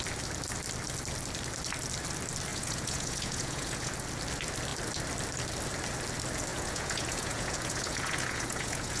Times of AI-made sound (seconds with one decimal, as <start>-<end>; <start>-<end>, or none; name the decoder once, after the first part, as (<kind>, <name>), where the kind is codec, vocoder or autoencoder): 2.5-3.9 (vocoder, Vocos); 6.5-9.0